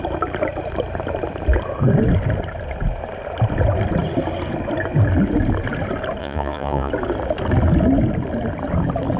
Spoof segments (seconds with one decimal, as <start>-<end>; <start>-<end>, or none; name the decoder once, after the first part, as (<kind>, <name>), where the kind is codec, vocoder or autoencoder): 6.2-6.9 (vocoder, Vocos)